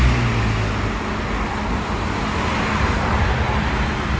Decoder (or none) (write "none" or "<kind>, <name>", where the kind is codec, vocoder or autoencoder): none